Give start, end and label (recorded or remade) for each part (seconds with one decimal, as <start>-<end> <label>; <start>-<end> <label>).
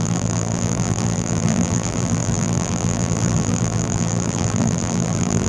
0.0-5.5 remade